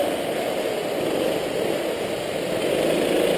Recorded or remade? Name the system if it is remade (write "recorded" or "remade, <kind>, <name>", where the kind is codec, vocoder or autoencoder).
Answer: recorded